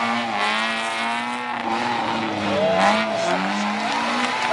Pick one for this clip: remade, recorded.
recorded